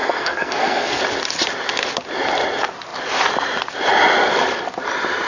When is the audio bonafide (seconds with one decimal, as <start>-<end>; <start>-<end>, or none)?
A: 1.0-5.3